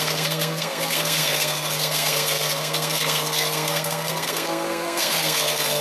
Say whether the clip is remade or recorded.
remade